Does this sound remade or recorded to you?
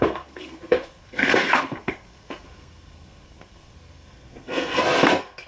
remade